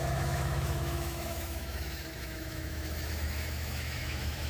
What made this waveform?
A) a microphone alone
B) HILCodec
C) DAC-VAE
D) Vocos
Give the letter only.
C